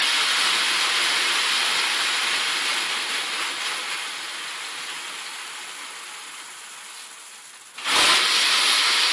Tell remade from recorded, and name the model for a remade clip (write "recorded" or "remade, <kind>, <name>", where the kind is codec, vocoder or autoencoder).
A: recorded